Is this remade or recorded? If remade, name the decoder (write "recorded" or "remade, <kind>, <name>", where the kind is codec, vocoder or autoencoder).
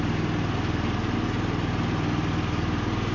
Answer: recorded